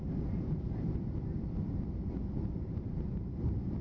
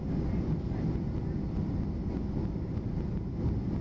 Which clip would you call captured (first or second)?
second